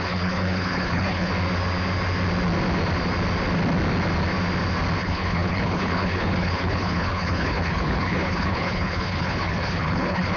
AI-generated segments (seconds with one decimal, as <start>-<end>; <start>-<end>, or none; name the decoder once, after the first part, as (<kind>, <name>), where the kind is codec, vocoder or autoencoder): 0.0-1.3 (codec, HILCodec); 5.0-10.4